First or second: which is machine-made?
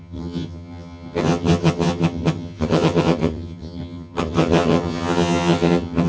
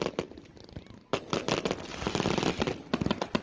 first